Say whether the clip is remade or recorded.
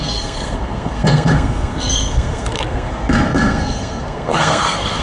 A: remade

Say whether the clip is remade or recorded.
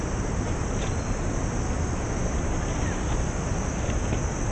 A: recorded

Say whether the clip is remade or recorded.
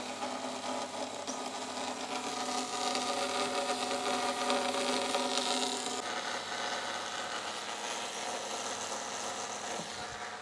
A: recorded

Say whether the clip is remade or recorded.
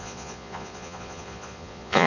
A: remade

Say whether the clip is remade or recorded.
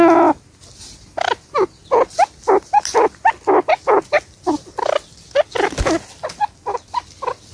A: recorded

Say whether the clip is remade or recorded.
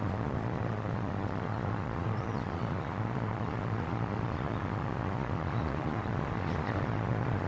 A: remade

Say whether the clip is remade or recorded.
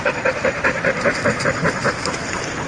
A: remade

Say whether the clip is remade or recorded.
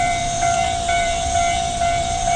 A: remade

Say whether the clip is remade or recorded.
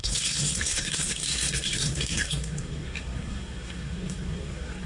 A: remade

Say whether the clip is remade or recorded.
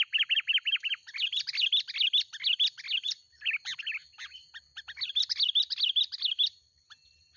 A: recorded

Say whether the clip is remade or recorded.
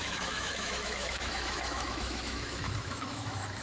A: remade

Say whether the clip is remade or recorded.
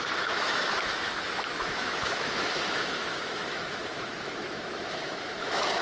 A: remade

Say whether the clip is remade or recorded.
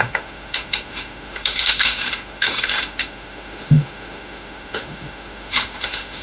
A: remade